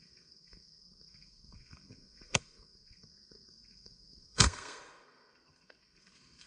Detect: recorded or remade remade